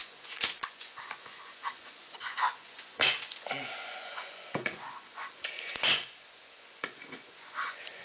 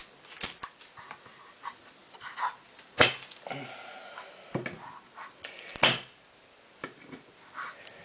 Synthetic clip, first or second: first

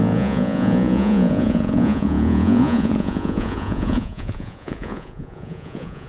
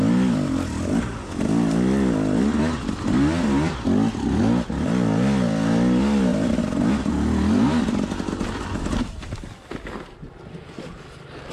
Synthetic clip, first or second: first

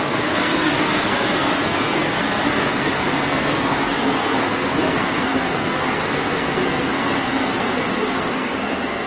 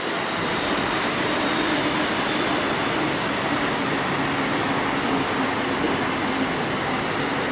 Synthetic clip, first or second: first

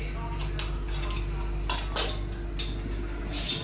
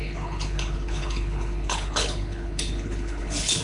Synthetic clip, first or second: second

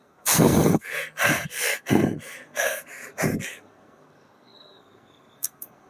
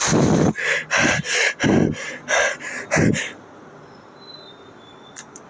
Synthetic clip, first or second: first